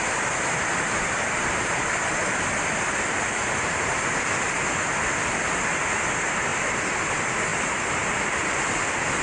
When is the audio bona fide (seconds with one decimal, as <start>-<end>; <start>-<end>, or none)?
0.0-9.2